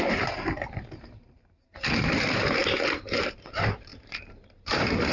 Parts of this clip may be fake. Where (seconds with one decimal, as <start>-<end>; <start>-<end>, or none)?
0.0-2.6; 3.2-5.1